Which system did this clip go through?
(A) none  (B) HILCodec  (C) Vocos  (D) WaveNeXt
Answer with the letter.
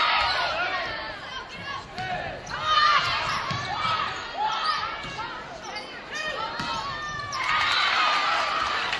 A